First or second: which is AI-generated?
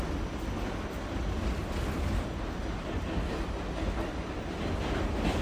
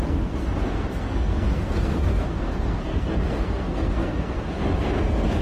second